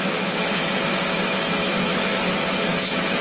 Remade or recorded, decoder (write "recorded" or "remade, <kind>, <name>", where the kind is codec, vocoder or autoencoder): remade, autoencoder, DAC-VAE